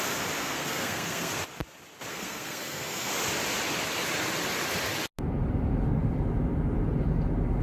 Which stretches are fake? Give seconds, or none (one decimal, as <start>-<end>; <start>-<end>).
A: 0.4-1.4; 2.1-3.1